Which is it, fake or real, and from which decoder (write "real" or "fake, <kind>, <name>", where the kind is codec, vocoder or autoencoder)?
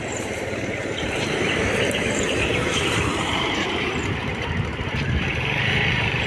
fake, vocoder, BigVGAN v2